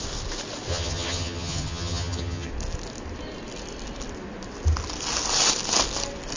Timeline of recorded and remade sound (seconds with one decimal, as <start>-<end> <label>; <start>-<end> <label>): 0.0-0.7 recorded; 0.7-2.5 remade; 2.5-6.4 recorded